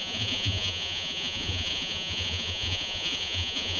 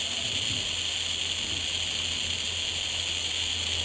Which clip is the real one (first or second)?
second